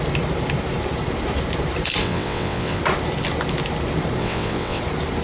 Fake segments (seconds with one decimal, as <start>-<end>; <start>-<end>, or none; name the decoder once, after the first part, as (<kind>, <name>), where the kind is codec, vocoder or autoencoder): 2.0-2.8 (vocoder, WaveNeXt); 4.2-4.8